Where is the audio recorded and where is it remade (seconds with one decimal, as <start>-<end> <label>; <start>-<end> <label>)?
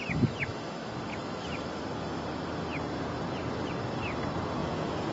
0.0-4.6 recorded; 4.6-5.1 remade